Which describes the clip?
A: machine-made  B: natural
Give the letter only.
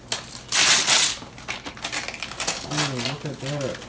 B